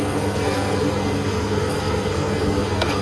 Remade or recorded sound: remade